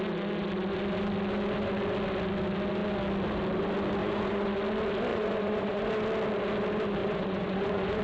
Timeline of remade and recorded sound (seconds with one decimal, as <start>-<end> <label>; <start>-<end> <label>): 0.0-4.0 recorded; 4.0-4.5 remade; 4.5-5.1 recorded; 5.1-5.9 remade; 5.9-7.0 recorded; 7.0-8.0 remade